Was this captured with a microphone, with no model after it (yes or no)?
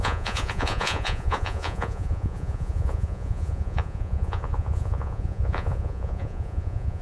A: no